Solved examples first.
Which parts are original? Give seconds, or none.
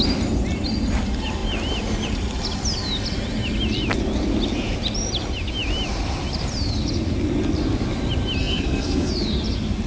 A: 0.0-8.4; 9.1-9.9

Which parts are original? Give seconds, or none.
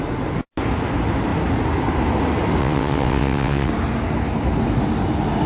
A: 0.0-2.6; 3.7-5.5